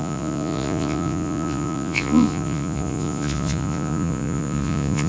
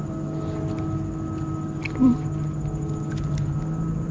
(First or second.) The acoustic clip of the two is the second